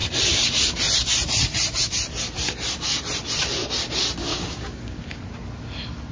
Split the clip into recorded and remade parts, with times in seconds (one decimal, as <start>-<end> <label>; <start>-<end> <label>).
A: 0.0-4.3 recorded; 4.3-5.2 remade; 5.2-6.1 recorded